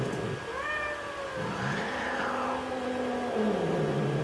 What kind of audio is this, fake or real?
real